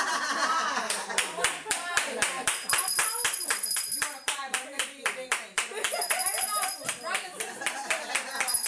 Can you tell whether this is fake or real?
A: fake